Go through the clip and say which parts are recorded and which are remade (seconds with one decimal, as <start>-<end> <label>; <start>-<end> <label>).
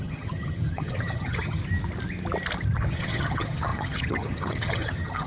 0.0-1.6 remade; 1.6-2.9 recorded; 2.9-5.3 remade